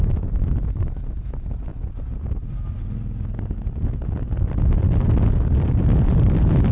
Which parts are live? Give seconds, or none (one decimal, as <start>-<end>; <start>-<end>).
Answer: 0.0-6.7